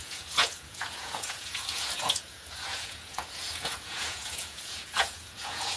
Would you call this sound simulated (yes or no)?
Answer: yes